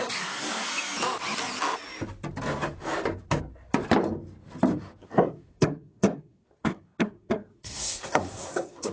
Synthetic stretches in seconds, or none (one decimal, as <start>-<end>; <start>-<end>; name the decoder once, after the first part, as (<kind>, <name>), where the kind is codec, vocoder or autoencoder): 0.0-0.7 (codec, SNAC); 5.0-8.9